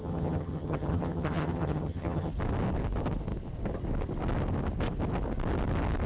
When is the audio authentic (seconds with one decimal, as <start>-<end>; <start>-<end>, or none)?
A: 2.3-6.1